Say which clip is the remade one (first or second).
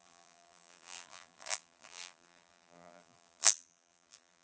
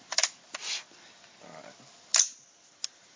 first